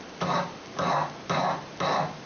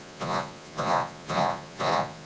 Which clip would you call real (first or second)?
first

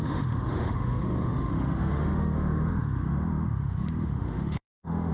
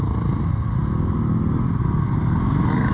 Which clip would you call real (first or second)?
second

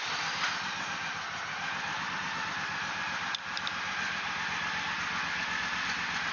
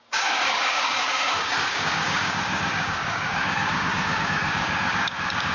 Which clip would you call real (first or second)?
first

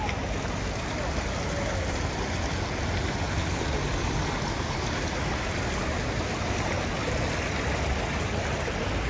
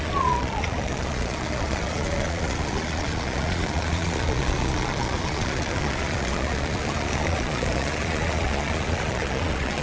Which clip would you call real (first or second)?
first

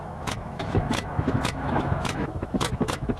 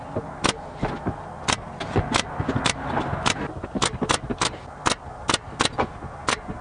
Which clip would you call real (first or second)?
second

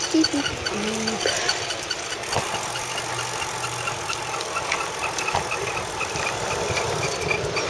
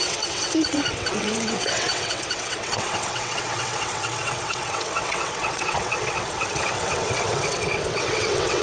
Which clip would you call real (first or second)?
first